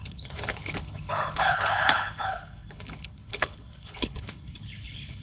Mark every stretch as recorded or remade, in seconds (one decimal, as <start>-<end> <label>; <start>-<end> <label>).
0.0-5.2 remade

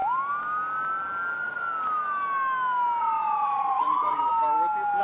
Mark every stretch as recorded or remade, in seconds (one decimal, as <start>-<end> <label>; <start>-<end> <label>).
0.0-3.0 recorded; 3.0-4.3 remade; 4.3-5.0 recorded

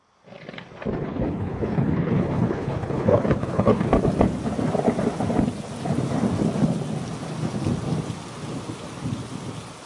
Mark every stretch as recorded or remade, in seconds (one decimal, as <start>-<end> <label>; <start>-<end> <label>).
0.0-1.0 recorded; 1.0-3.9 remade; 3.9-9.9 recorded

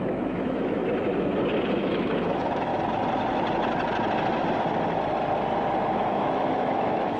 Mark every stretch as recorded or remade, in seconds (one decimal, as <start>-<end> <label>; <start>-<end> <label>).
0.0-0.8 remade; 0.8-1.7 recorded; 1.7-2.7 remade; 2.7-5.9 recorded; 5.9-7.2 remade

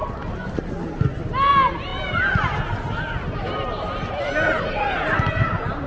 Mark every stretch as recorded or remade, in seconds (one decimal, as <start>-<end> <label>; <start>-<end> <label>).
0.0-5.9 recorded

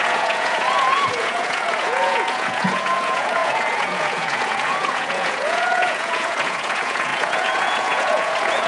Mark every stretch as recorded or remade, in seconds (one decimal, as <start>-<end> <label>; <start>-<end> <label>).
0.0-8.7 remade